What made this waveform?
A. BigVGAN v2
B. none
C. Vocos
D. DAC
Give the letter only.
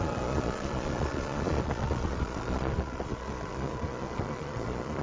C